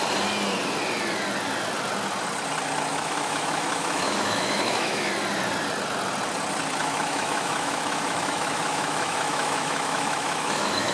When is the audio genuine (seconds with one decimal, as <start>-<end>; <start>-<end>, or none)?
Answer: 0.0-2.9; 5.1-6.8